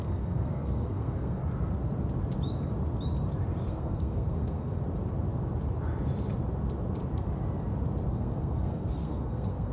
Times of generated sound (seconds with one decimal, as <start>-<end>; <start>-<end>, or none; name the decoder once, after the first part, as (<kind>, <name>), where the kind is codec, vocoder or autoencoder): 0.0-1.4 (codec, SNAC); 3.7-4.8; 8.1-9.7